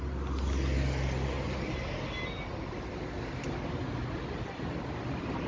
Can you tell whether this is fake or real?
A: real